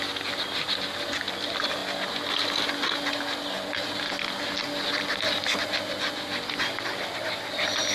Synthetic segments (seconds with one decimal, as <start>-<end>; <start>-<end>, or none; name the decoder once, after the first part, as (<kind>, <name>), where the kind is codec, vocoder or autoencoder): none